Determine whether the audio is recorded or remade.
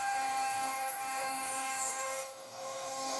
remade